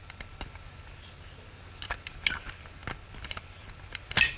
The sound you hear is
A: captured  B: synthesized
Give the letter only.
A